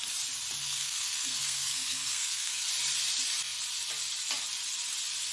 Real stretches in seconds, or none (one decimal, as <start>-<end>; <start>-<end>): 0.0-0.6; 2.7-5.3